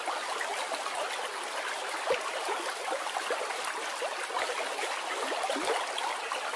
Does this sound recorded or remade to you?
recorded